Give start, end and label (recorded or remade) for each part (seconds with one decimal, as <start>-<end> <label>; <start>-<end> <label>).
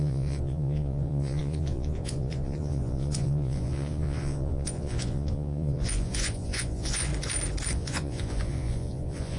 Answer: 0.0-7.1 remade; 7.1-7.7 recorded; 7.7-9.4 remade